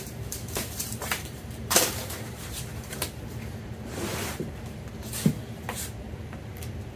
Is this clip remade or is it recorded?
remade